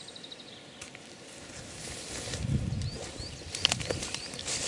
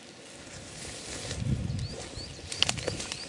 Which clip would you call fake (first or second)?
first